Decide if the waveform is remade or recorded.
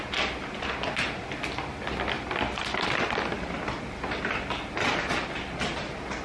recorded